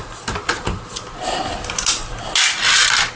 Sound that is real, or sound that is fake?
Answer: real